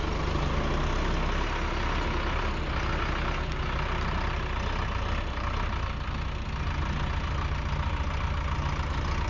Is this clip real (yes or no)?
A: yes